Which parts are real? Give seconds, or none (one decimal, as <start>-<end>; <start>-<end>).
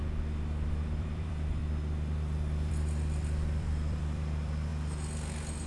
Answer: 0.0-0.7; 1.6-2.7; 4.7-5.7